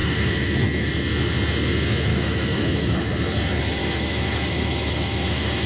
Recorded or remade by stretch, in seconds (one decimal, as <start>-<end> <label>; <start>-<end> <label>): 0.0-0.9 remade; 0.9-2.1 recorded; 2.1-3.1 remade; 3.1-3.8 recorded; 3.8-5.7 remade